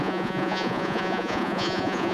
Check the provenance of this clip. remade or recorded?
remade